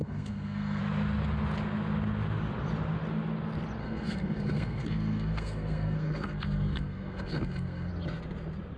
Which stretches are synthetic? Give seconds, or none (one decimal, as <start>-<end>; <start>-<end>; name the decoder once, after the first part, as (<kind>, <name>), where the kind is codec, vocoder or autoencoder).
0.0-0.8 (codec, SNAC); 3.8-7.9